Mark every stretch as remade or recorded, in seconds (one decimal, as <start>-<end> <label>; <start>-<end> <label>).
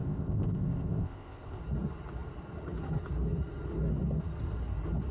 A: 0.0-1.6 remade; 1.6-5.1 recorded